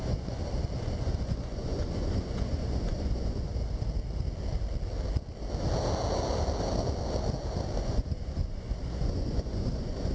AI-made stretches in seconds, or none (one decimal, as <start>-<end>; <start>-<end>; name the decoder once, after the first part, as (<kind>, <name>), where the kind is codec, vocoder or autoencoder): 0.0-0.4 (vocoder, Vocos); 1.0-3.5; 7.8-10.1